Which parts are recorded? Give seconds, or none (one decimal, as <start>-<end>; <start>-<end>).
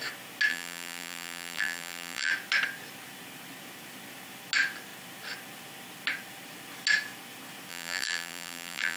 0.0-0.5; 2.3-7.7